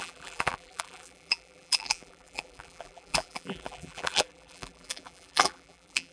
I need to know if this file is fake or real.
fake